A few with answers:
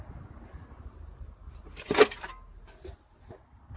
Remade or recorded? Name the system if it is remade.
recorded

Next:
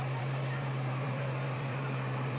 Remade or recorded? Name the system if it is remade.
remade, vocoder, BigVGAN v2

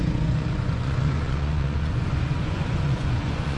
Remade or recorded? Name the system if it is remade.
remade, vocoder, Vocos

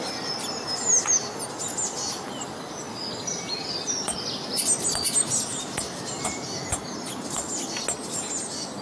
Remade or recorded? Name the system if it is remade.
recorded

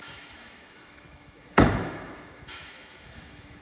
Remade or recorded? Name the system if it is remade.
remade, autoencoder, DAC-VAE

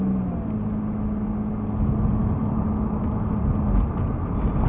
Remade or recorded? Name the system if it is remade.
recorded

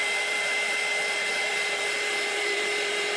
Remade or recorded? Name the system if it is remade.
remade, vocoder, BigVGAN v2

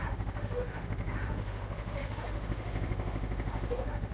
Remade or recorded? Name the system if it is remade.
remade, autoencoder, DAC-VAE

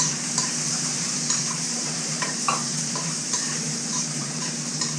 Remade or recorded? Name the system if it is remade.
remade, vocoder, BigVGAN v2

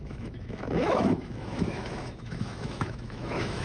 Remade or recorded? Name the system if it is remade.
remade, autoencoder, DAC-VAE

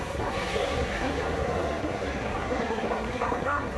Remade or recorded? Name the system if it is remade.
remade, codec, SNAC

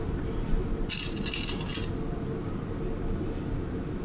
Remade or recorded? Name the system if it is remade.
recorded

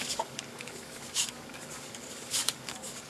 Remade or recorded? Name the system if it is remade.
remade, codec, DAC